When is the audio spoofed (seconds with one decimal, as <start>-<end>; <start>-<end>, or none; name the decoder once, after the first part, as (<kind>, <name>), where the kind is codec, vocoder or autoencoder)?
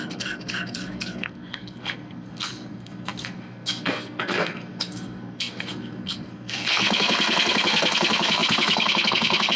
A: 0.0-9.6 (codec, SNAC)